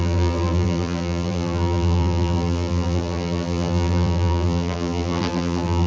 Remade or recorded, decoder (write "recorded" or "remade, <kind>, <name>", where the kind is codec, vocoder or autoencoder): remade, vocoder, BigVGAN v2